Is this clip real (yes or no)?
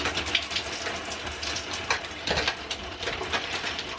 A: yes